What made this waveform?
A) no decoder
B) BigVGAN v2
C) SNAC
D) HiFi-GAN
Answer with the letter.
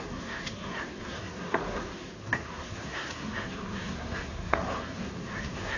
C